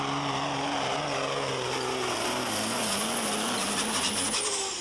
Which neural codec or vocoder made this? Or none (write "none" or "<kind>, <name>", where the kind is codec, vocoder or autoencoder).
none